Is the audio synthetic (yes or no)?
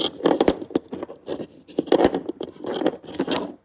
no